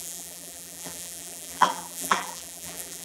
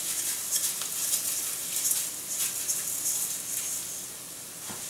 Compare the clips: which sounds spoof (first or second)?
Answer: first